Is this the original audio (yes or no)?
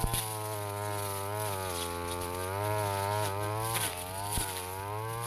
yes